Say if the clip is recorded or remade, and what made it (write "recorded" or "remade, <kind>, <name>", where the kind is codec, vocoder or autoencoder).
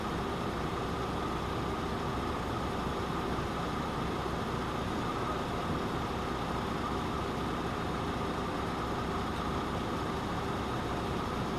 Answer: recorded